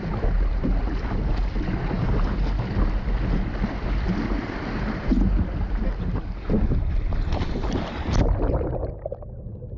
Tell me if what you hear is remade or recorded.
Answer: recorded